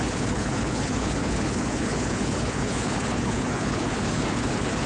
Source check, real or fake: fake